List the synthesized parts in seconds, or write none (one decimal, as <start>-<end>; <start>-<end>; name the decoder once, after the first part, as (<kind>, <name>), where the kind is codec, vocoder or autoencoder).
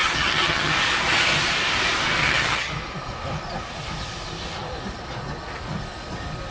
0.0-0.7 (vocoder, HiFi-GAN); 2.2-2.7